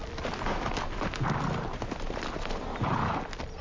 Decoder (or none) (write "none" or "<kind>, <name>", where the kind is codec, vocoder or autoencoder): none